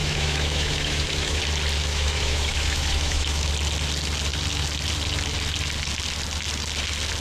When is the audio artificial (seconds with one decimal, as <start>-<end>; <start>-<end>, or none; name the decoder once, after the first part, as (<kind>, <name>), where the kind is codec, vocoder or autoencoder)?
0.0-1.4 (autoencoder, DAC-VAE); 1.8-3.5